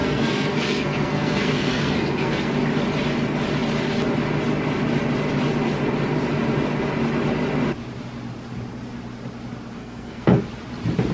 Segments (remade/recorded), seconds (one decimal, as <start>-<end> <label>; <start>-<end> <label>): 0.0-2.5 remade; 2.5-9.8 recorded; 9.8-10.4 remade; 10.4-11.1 recorded